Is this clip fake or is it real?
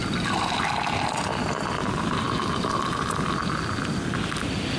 real